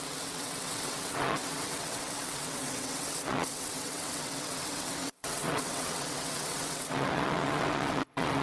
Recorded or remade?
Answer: remade